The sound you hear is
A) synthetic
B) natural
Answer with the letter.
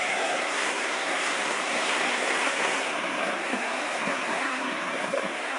A